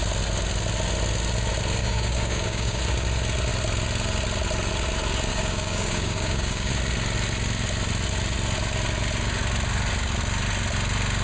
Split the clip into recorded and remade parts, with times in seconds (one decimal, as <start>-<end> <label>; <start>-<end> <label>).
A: 0.0-1.8 recorded; 1.8-2.8 remade; 2.8-5.3 recorded; 5.3-6.7 remade; 6.7-11.2 recorded